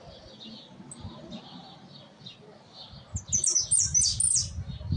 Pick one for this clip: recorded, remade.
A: recorded